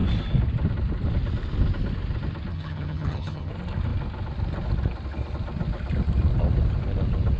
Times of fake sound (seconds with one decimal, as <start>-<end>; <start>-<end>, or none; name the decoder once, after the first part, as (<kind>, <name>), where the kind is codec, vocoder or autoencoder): 2.5-3.5 (vocoder, HiFi-GAN)